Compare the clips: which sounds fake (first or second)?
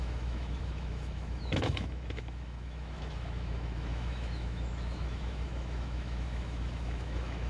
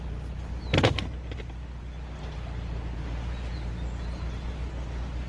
first